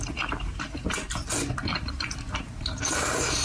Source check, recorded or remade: remade